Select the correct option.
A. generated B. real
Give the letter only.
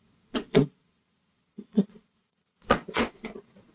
A